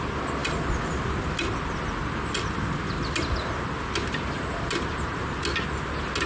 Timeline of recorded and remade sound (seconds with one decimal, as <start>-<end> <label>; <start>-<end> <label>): 0.0-6.3 recorded